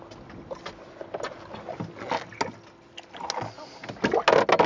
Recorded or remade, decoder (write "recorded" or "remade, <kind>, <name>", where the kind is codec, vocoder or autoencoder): recorded